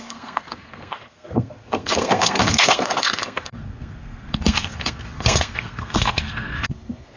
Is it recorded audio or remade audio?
remade